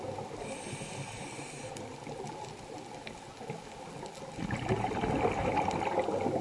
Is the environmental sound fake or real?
real